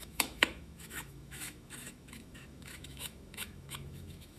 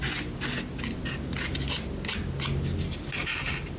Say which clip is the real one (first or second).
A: second